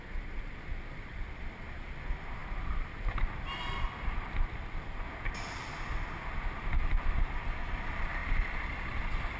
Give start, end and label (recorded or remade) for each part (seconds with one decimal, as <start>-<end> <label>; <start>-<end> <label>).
0.0-9.4 recorded